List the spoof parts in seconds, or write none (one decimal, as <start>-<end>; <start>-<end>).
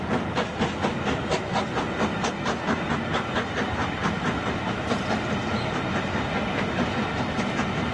3.8-5.0